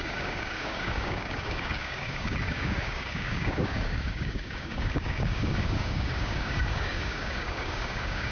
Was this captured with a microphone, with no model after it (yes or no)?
no